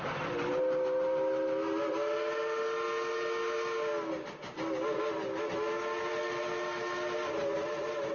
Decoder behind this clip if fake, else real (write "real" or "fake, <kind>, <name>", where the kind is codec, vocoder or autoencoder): real